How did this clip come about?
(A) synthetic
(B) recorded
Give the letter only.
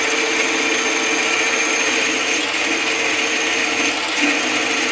B